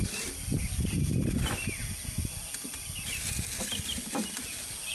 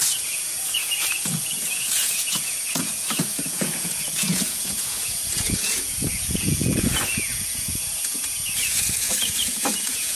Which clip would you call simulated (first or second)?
second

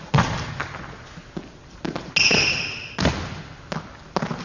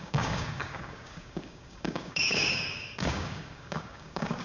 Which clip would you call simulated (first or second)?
second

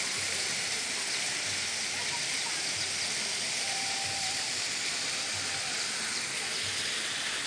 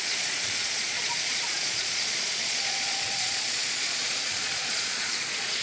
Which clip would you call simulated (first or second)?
second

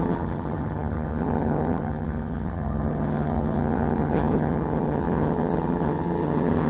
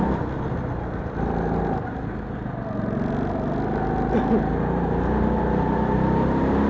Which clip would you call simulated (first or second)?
first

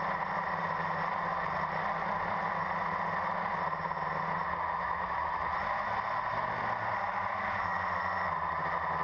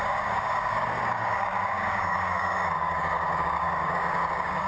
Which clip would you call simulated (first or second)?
second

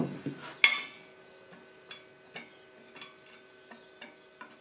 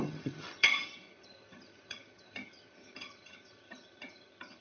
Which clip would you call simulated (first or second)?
second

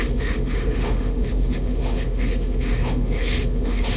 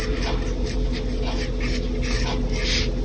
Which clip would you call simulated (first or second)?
first